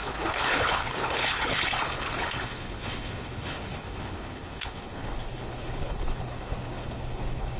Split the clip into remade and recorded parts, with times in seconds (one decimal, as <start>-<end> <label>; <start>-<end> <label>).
0.0-7.6 remade